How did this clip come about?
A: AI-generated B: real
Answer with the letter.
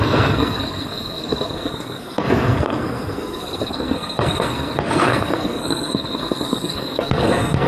A